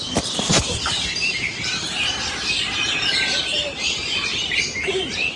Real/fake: fake